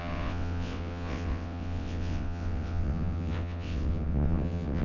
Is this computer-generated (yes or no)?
yes